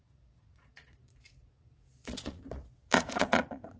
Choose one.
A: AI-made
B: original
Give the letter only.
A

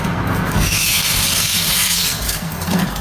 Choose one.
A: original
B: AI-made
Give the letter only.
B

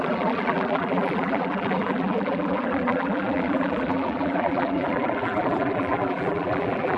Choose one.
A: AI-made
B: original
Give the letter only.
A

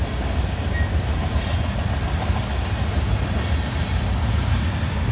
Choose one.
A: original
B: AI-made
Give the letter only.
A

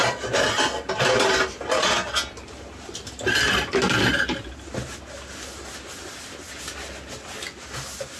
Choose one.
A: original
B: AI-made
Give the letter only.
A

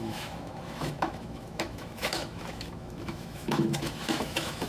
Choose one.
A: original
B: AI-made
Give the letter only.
B